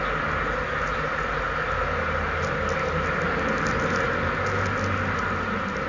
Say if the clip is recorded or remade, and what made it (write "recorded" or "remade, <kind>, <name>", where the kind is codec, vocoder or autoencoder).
recorded